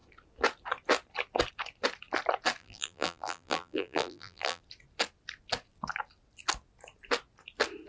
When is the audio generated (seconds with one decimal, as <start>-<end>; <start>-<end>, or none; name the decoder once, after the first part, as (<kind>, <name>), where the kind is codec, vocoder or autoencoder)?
2.6-4.6 (vocoder, BigVGAN v2)